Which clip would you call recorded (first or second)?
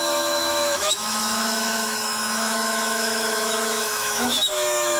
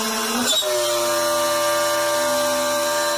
second